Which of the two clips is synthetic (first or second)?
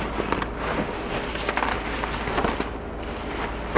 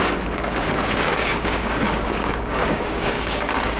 second